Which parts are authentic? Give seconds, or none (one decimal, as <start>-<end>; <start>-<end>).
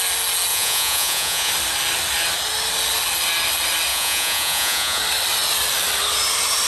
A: 0.0-0.5; 1.5-3.9; 5.0-6.7